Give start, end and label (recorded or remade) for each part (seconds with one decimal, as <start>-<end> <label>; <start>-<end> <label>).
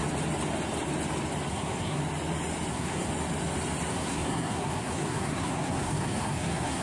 0.0-1.5 recorded; 1.5-2.0 remade; 2.0-2.7 recorded; 2.7-3.1 remade; 3.1-3.9 recorded; 3.9-6.8 remade